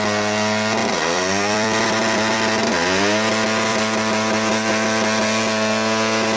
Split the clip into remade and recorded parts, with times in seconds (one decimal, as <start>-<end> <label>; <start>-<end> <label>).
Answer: 0.0-0.8 recorded; 0.8-2.7 remade; 2.7-3.7 recorded; 3.7-4.7 remade; 4.7-6.4 recorded